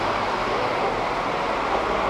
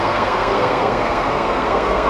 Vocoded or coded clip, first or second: second